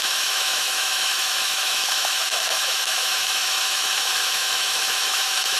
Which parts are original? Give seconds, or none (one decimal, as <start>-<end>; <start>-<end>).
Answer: none